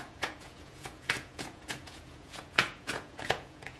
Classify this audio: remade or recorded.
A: remade